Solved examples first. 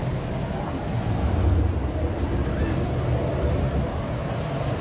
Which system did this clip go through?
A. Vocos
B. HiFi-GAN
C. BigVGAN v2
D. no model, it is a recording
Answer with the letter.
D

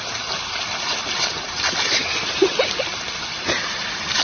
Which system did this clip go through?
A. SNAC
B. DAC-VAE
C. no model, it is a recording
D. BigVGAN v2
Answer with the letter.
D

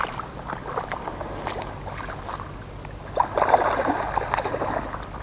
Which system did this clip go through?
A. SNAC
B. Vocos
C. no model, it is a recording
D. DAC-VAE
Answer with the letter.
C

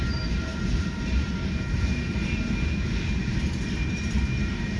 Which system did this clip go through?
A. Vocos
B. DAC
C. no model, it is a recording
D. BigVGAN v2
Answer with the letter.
D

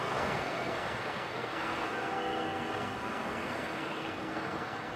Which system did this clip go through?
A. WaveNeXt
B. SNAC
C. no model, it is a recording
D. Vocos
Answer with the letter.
B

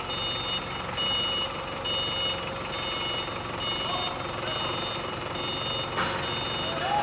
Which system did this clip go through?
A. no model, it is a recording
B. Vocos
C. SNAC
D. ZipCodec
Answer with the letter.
A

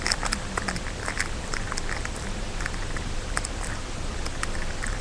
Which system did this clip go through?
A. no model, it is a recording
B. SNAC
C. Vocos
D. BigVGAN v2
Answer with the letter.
A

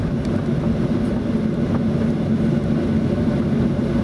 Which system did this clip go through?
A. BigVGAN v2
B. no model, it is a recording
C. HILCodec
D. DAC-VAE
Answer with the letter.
B